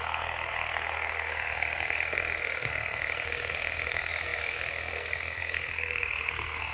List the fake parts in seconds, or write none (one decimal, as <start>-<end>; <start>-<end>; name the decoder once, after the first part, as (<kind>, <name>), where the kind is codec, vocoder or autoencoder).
0.0-6.7 (codec, SNAC)